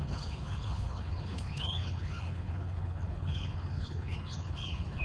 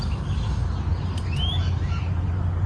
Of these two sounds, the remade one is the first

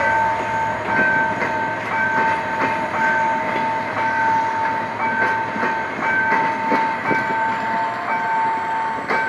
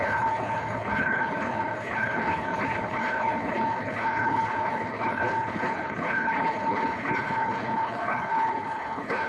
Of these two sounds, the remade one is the second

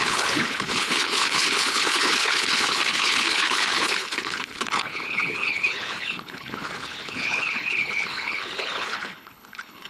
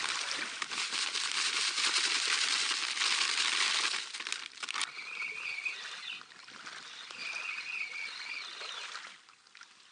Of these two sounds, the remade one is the first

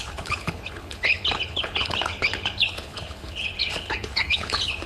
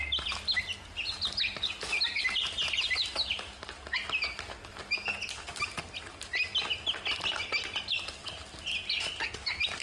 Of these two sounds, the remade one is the first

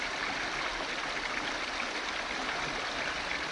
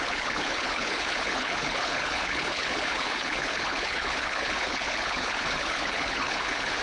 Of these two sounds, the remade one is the second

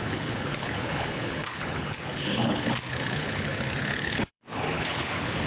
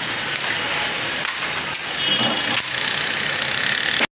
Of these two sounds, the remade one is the first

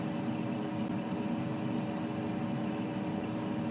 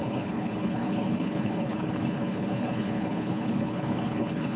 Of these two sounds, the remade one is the second